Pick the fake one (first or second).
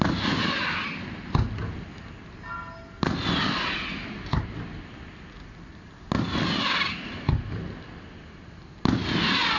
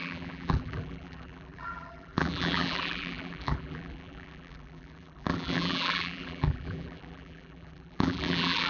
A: second